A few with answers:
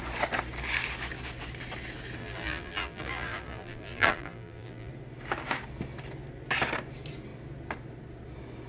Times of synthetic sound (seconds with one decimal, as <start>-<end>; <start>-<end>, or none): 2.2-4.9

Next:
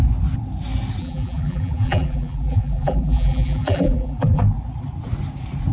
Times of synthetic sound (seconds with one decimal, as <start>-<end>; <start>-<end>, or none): 1.0-4.4

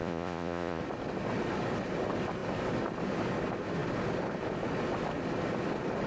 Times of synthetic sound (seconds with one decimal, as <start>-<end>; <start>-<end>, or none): 0.0-0.8

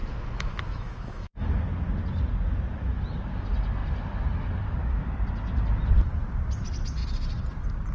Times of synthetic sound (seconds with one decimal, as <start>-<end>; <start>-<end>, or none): 0.0-1.5